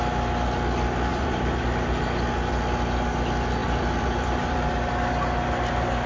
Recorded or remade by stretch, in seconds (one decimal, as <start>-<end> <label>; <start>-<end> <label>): 0.0-1.1 recorded; 1.1-1.6 remade; 1.6-3.6 recorded; 3.6-4.7 remade; 4.7-6.1 recorded

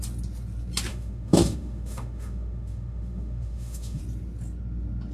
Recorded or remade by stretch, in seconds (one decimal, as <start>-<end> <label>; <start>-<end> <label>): 0.0-0.9 recorded; 0.9-4.0 remade; 4.0-5.1 recorded